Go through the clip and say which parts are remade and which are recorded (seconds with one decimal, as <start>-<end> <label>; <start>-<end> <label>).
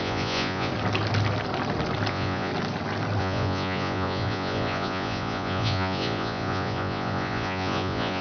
0.0-0.7 remade; 0.7-2.1 recorded; 2.1-2.5 remade; 2.5-3.2 recorded; 3.2-8.2 remade